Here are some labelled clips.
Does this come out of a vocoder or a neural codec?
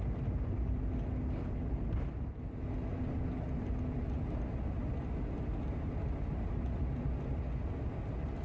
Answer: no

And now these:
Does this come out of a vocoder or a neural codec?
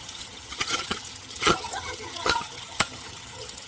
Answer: yes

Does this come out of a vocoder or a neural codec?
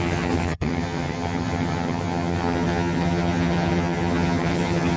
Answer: yes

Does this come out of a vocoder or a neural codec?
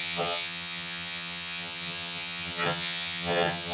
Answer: yes